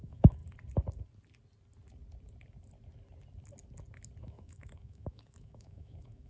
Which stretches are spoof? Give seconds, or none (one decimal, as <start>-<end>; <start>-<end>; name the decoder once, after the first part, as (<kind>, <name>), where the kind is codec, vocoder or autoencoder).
0.0-0.4 (autoencoder, DAC-VAE); 4.2-6.3